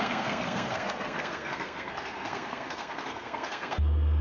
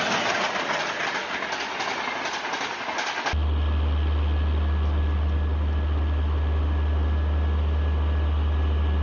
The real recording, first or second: second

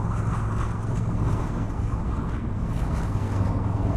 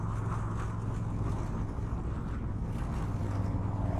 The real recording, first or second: second